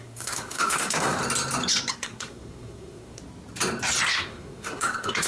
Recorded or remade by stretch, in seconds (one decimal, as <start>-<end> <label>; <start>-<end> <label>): 0.0-1.2 remade; 1.2-1.9 recorded; 1.9-3.2 remade; 3.2-4.1 recorded; 4.1-5.3 remade